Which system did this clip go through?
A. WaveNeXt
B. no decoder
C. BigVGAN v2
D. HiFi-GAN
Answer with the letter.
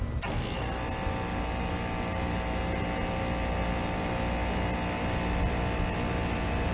B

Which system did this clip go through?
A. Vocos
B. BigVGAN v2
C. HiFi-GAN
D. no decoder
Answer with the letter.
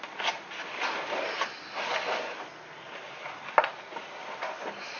D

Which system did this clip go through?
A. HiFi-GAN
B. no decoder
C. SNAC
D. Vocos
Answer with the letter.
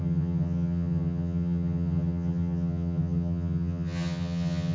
A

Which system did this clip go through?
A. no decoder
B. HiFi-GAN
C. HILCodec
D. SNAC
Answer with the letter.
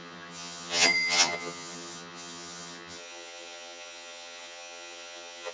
B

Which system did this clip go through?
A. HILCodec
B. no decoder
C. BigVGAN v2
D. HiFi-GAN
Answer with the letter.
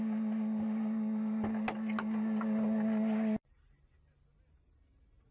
B